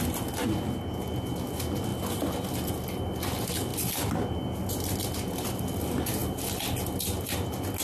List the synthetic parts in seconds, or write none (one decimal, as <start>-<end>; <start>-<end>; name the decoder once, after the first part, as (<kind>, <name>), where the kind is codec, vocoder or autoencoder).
none